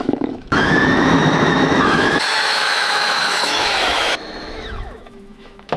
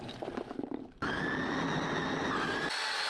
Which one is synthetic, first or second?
first